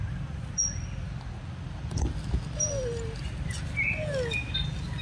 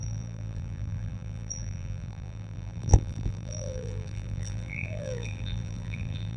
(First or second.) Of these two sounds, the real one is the first